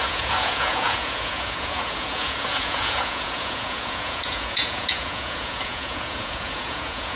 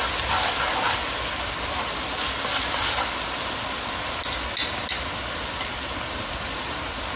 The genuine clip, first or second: second